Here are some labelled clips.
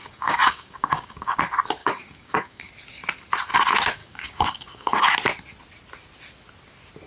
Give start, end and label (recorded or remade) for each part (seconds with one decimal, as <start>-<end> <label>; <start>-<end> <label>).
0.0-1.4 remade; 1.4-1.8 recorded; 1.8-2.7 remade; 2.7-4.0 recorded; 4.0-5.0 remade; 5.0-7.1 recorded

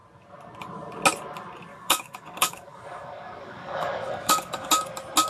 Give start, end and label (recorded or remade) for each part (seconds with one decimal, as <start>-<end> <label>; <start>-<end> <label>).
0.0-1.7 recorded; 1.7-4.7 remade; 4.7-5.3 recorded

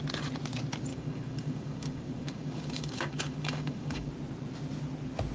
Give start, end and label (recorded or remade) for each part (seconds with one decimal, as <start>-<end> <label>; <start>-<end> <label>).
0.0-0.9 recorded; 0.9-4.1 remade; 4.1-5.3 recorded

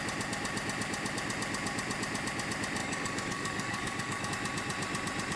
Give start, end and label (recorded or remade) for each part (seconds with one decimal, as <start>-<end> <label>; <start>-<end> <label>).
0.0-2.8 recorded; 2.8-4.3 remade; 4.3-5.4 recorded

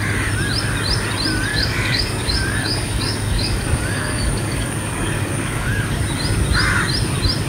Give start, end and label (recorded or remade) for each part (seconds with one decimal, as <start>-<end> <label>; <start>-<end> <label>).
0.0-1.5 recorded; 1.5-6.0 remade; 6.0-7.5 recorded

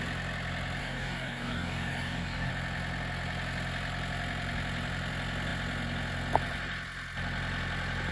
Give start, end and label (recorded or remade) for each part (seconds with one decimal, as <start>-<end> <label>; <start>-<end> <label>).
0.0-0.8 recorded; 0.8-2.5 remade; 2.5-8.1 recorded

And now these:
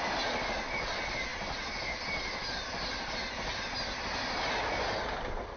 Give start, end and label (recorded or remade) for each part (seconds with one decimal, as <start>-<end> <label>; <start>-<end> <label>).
0.0-5.6 recorded

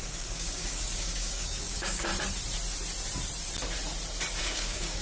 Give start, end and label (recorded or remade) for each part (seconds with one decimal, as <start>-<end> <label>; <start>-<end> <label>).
0.0-2.1 remade; 2.1-4.4 recorded; 4.4-5.0 remade